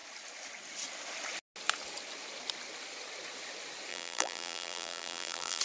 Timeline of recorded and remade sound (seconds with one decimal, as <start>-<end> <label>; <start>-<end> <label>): 0.0-3.9 recorded; 3.9-5.6 remade